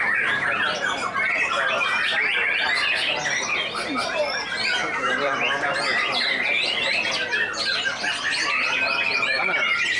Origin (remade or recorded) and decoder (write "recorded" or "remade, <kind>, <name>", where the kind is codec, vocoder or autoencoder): recorded